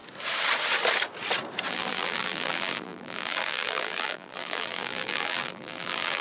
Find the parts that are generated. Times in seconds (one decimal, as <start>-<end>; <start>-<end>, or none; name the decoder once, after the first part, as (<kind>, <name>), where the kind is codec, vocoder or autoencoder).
1.7-6.2 (vocoder, BigVGAN v2)